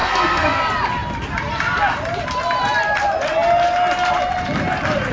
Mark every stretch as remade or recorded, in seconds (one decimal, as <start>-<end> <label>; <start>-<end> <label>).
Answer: 0.0-0.6 remade; 0.6-5.1 recorded